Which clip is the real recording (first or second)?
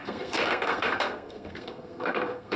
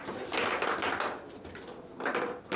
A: second